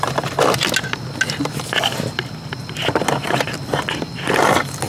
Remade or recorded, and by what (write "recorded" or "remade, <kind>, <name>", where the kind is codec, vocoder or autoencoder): recorded